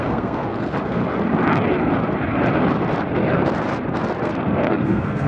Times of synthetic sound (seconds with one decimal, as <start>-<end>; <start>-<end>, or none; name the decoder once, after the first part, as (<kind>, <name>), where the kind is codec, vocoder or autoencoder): 0.0-1.0 (codec, SNAC); 4.2-5.3

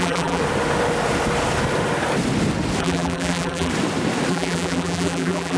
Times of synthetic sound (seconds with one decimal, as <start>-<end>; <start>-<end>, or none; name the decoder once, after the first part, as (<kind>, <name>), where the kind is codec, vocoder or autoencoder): 0.0-0.4 (vocoder, BigVGAN v2); 2.8-3.7; 4.3-5.6

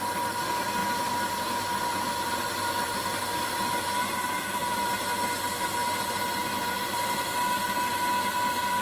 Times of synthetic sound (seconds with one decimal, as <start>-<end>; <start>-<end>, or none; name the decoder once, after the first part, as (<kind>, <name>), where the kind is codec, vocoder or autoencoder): none

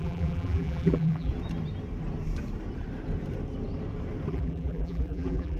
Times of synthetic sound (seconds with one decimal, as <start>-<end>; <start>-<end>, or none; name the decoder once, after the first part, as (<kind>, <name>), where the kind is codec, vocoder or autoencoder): 0.0-1.3 (vocoder, BigVGAN v2); 4.3-5.6

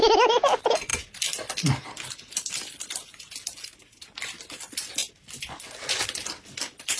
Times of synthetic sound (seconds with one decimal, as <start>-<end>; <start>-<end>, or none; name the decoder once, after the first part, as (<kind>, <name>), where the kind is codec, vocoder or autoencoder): none

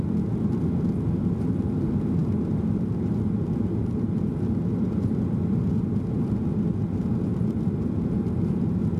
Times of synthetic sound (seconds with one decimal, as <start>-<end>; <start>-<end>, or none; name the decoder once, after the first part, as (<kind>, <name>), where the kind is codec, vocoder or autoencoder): none